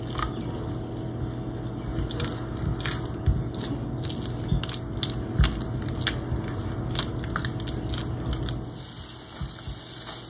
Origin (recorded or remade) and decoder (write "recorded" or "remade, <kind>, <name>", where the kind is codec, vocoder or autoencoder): recorded